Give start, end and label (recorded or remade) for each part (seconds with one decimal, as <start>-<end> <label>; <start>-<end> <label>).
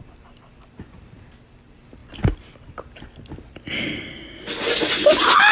0.0-5.5 recorded